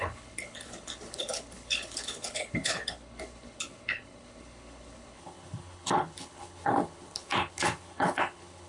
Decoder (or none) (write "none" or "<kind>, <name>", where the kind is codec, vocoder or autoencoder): codec, HILCodec